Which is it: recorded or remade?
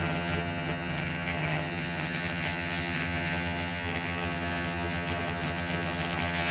remade